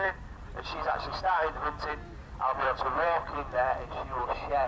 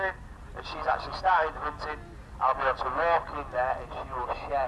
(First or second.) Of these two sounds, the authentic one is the second